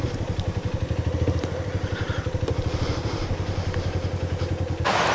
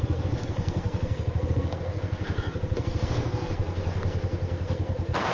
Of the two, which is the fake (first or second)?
second